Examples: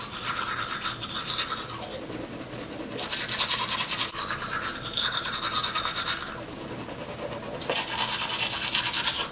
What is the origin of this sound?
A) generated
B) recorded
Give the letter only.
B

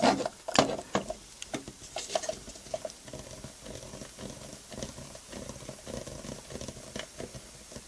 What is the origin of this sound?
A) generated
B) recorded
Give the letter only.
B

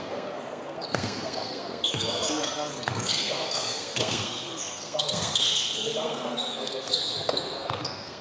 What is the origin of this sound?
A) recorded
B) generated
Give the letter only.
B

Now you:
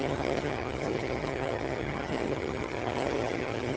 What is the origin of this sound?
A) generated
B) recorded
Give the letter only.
A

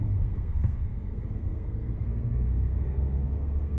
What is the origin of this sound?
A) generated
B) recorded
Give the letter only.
A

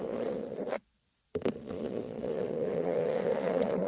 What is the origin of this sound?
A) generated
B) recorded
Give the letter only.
A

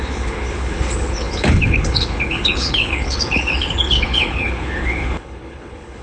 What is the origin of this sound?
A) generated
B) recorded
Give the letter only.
A